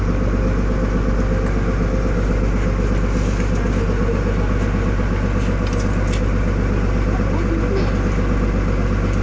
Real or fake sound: real